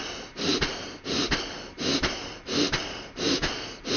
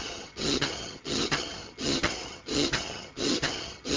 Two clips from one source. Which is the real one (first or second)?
first